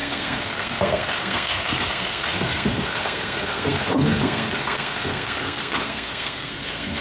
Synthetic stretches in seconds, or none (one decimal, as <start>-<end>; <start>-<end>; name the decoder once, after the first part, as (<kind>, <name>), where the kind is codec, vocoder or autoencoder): 0.0-7.0 (codec, SNAC)